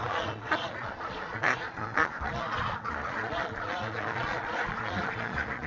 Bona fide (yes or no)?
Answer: no